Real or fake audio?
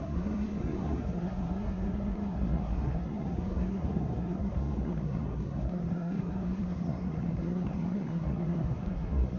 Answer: fake